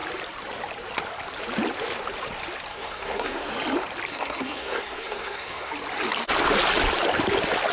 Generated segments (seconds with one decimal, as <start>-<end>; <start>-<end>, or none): 2.7-3.5; 4.1-5.7